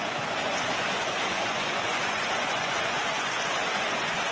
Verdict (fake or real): fake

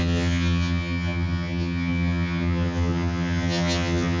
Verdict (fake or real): fake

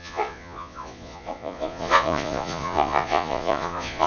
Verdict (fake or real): fake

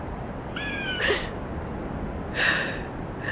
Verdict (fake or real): real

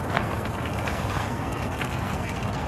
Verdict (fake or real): fake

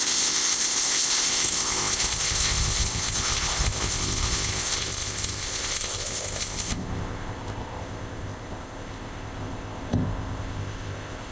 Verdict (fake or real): fake